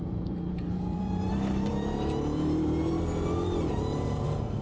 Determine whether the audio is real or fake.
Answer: fake